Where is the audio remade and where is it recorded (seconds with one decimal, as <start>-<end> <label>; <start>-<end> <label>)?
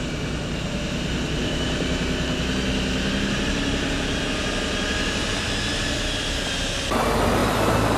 0.0-8.0 recorded